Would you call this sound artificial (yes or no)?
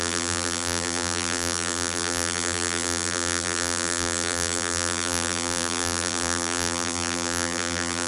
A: yes